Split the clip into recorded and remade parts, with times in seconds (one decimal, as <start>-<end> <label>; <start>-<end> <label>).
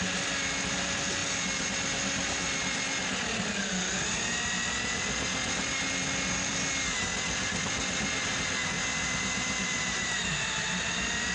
0.0-9.6 recorded; 9.6-10.3 remade; 10.3-11.3 recorded